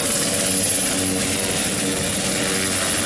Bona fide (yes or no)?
yes